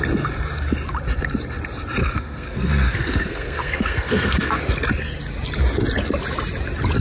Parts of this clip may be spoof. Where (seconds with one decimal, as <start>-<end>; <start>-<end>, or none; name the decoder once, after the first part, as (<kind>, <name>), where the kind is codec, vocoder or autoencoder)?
2.0-4.6 (codec, SNAC)